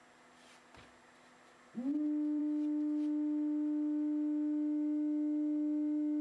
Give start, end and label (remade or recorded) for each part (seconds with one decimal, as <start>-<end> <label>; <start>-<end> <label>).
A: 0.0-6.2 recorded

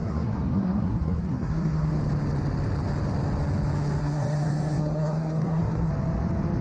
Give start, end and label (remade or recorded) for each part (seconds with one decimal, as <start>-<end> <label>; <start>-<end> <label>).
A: 0.0-1.9 remade; 1.9-4.0 recorded; 4.0-5.9 remade; 5.9-6.6 recorded

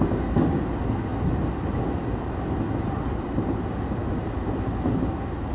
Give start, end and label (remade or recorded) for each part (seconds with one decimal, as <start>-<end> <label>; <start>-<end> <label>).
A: 0.0-5.5 recorded

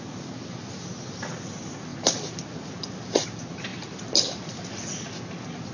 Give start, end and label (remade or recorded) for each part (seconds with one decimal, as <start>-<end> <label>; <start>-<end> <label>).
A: 0.0-5.7 recorded

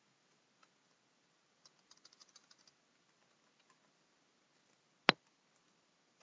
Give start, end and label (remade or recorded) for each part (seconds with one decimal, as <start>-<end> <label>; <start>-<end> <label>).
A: 0.0-6.2 recorded